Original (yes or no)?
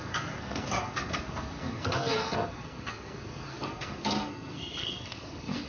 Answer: no